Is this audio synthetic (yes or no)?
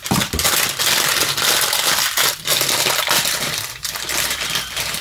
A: yes